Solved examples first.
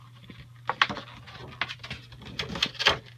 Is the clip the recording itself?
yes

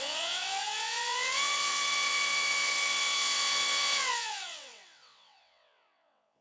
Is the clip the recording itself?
no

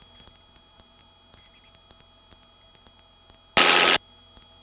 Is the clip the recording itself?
yes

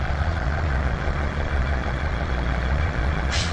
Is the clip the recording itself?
no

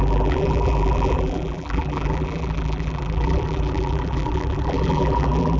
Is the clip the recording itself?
no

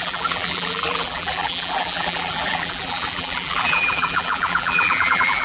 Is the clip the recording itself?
no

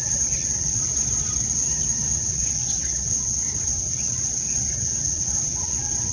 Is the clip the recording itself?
no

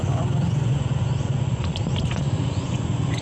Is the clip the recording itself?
no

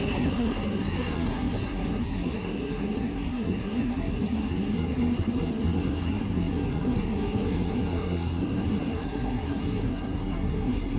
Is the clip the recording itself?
no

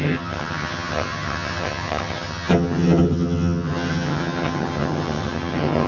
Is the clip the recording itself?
no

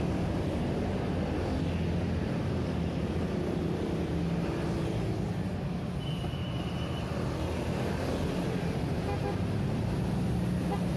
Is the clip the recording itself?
yes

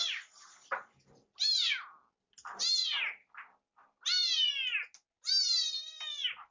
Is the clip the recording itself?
yes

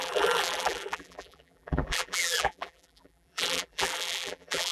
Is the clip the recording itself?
no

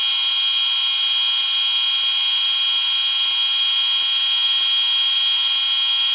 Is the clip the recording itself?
yes